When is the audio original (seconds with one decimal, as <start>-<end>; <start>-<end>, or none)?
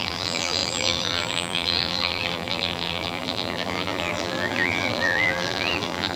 none